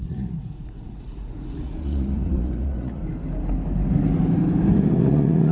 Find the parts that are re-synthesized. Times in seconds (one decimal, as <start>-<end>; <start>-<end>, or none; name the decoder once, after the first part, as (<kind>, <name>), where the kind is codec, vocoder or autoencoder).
0.0-3.0 (vocoder, Vocos); 5.0-5.5